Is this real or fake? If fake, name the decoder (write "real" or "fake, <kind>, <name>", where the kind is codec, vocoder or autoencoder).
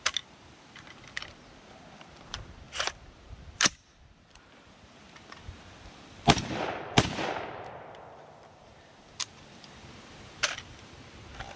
fake, vocoder, BigVGAN v2